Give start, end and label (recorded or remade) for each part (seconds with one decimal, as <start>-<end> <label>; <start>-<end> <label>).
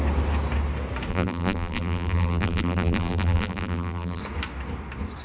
0.0-1.1 recorded; 1.1-4.2 remade; 4.2-5.2 recorded